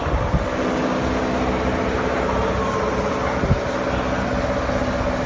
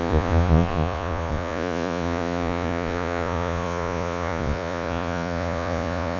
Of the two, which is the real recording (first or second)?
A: first